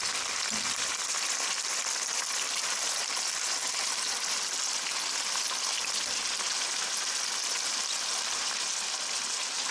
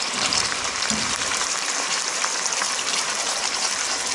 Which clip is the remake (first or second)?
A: second